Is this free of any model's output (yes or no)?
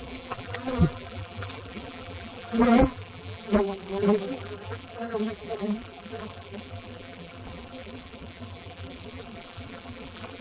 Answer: no